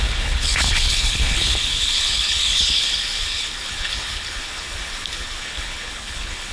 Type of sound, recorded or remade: remade